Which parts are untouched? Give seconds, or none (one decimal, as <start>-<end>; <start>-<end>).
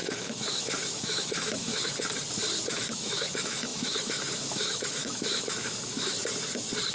1.7-2.7; 6.2-6.9